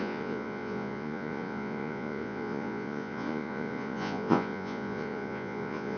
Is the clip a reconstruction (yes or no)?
yes